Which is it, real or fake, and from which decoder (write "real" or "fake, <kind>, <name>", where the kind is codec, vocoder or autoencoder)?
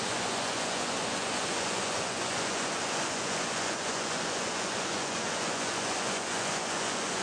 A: fake, vocoder, Vocos